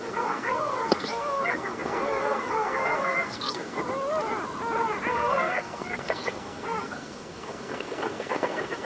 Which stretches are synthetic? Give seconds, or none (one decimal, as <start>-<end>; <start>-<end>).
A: 0.0-3.8; 5.1-8.8